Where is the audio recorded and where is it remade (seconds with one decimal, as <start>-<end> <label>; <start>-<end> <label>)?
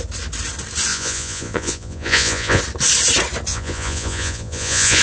0.0-0.9 recorded; 0.9-2.6 remade; 2.6-3.5 recorded; 3.5-5.0 remade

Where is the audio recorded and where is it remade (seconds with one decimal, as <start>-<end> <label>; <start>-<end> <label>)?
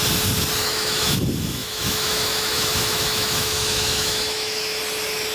0.0-0.6 recorded; 0.6-1.2 remade; 1.2-1.6 recorded; 1.6-4.8 remade; 4.8-5.3 recorded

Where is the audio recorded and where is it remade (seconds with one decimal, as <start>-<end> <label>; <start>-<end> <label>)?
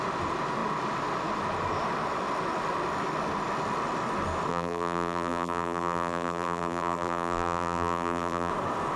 0.0-4.5 recorded; 4.5-8.5 remade; 8.5-9.0 recorded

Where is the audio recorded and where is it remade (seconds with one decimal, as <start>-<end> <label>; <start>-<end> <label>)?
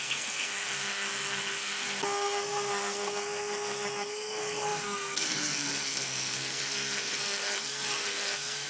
0.0-8.7 remade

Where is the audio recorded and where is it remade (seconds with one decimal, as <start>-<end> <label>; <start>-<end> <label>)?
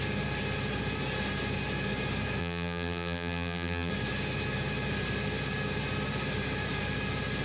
0.0-2.4 recorded; 2.4-3.9 remade; 3.9-7.4 recorded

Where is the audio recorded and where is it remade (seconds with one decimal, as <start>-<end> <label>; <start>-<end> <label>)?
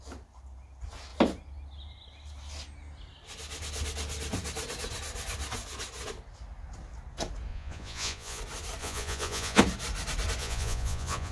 0.0-7.5 recorded; 7.5-8.4 remade; 8.4-8.8 recorded; 8.8-9.6 remade; 9.6-10.4 recorded; 10.4-11.3 remade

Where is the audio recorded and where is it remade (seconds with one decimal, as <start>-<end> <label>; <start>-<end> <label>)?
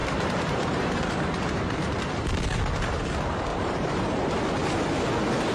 0.0-2.4 remade; 2.4-3.5 recorded; 3.5-4.4 remade; 4.4-5.5 recorded